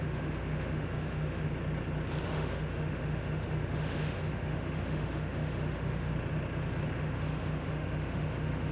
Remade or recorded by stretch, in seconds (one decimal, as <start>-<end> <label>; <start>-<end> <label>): 0.0-1.5 remade; 1.5-2.2 recorded; 2.2-6.1 remade; 6.1-7.0 recorded; 7.0-8.7 remade